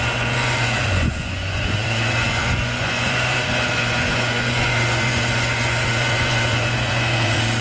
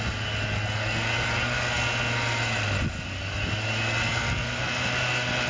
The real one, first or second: second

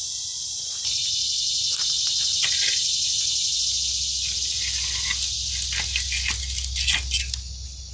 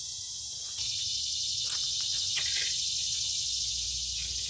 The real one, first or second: first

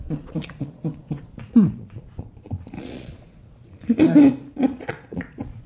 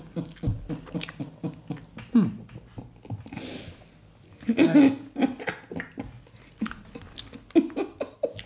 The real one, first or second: second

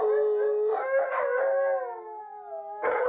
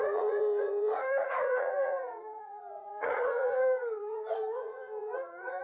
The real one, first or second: first